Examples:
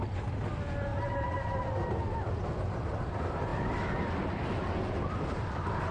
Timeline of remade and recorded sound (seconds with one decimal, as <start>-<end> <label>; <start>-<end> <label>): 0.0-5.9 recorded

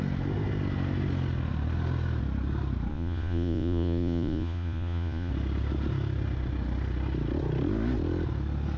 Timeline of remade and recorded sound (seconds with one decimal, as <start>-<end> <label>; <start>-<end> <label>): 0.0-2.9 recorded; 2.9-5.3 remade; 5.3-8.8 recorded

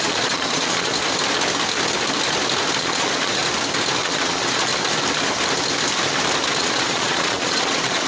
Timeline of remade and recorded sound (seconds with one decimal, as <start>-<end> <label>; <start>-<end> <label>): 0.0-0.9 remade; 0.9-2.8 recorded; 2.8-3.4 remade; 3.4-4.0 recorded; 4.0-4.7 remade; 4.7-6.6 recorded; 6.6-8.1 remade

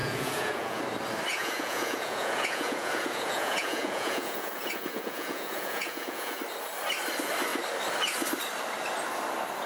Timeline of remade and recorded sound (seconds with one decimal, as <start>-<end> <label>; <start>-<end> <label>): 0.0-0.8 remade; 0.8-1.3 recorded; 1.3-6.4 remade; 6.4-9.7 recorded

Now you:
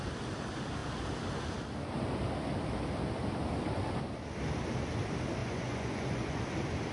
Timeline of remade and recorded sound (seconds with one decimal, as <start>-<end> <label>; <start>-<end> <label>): 0.0-5.4 recorded; 5.4-6.4 remade; 6.4-6.9 recorded